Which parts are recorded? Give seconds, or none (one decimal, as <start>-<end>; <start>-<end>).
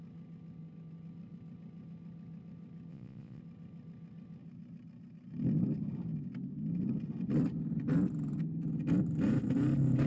0.0-2.9; 3.4-10.1